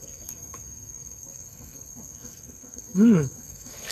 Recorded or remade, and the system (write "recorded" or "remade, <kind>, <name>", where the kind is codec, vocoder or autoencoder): remade, codec, SNAC